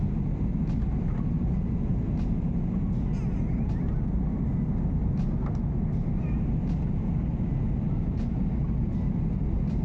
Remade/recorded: recorded